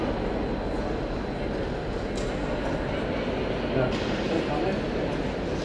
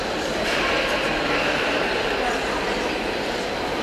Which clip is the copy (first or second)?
second